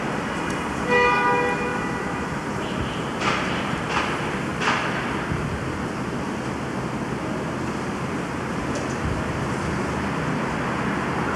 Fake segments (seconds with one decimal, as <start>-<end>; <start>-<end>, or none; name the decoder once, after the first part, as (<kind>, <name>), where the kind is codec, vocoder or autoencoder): 1.7-4.0 (vocoder, BigVGAN v2)